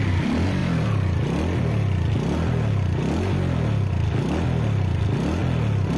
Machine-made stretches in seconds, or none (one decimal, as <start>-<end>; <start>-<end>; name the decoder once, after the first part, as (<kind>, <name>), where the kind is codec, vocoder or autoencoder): none